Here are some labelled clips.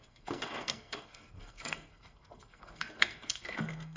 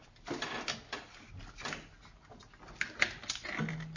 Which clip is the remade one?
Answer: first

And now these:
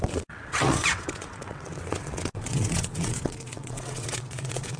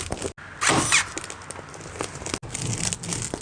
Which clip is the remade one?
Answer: first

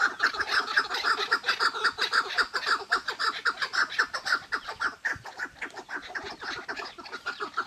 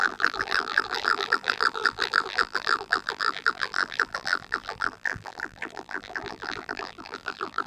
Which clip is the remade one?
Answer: second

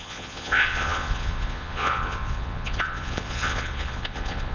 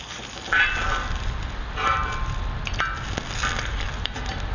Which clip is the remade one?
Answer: first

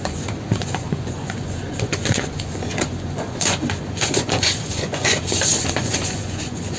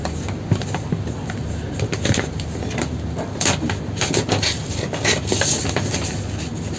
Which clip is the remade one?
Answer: first